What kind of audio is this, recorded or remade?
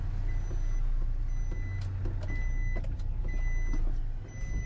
recorded